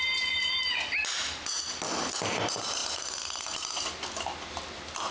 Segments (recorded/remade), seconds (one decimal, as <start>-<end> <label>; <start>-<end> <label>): 0.0-5.1 recorded